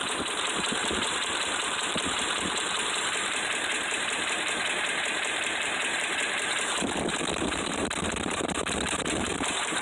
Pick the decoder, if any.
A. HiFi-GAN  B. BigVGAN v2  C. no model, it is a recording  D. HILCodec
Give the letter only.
B